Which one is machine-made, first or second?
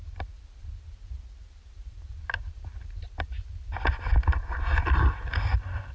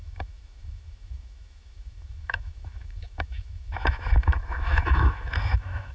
second